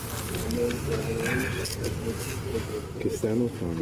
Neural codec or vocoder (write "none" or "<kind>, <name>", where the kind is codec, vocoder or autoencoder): none